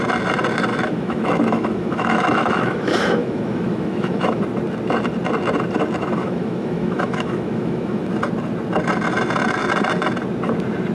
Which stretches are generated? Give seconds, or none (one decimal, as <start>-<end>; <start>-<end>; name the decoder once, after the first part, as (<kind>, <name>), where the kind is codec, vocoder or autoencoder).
0.7-4.4 (autoencoder, DAC-VAE); 6.2-8.1

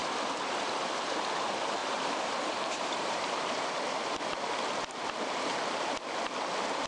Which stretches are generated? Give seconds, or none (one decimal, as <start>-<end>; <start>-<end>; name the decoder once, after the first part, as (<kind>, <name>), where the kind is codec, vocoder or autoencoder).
0.0-1.2 (vocoder, BigVGAN v2); 1.8-4.2

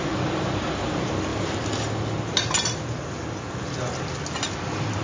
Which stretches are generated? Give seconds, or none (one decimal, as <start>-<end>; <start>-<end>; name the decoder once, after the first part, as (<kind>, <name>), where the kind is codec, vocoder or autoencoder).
none

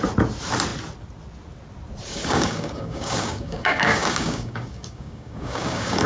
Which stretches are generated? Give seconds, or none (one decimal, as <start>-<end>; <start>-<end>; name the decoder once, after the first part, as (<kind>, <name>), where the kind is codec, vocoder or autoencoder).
2.1-6.1 (codec, DAC)